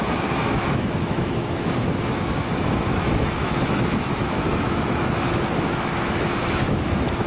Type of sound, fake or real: fake